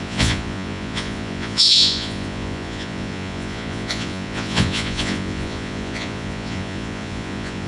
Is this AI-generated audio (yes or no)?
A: yes